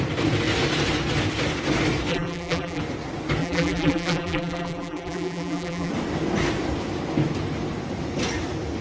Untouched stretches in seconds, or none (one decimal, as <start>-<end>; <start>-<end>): 0.0-2.1; 2.8-3.4; 5.9-8.8